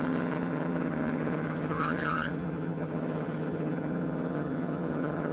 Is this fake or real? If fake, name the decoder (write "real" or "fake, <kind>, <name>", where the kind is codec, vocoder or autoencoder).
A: fake, vocoder, HiFi-GAN